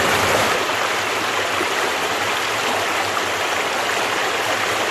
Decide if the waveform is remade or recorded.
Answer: recorded